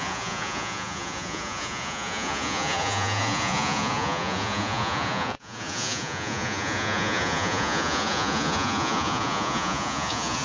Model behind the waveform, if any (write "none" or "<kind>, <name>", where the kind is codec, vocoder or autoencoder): vocoder, Vocos